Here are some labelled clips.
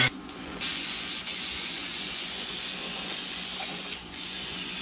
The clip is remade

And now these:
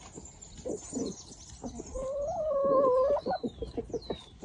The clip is recorded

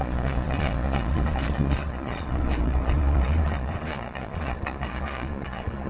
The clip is remade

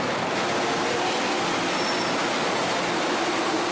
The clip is recorded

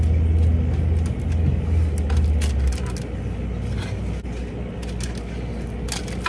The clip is recorded